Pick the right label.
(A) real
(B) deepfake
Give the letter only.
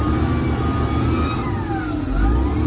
A